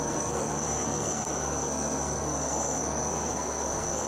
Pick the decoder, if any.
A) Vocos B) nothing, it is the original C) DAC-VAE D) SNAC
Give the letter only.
D